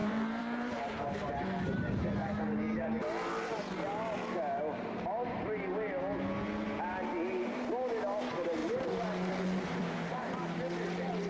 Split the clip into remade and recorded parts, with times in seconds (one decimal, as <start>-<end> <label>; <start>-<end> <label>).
0.0-1.3 remade; 1.3-8.6 recorded; 8.6-9.3 remade; 9.3-11.3 recorded